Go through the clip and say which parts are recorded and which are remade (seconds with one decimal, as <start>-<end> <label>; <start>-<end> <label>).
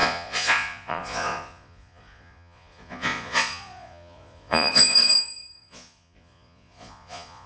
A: 0.0-7.5 remade